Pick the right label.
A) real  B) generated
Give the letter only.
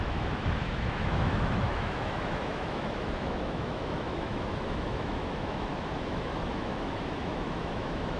B